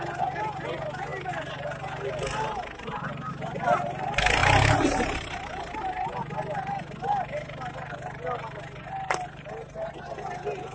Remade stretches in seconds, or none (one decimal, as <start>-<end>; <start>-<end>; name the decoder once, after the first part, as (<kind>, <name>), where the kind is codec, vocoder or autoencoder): none